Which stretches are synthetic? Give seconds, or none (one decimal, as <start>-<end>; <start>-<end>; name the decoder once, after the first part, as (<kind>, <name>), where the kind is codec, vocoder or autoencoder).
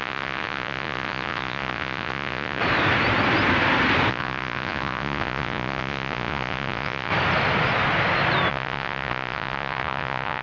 0.0-2.6 (vocoder, Vocos); 4.1-7.1; 8.5-10.4